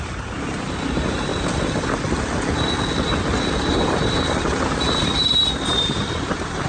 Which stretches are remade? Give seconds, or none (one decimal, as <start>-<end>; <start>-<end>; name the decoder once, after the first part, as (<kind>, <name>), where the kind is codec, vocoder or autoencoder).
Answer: 0.0-1.3 (vocoder, BigVGAN v2); 3.7-6.7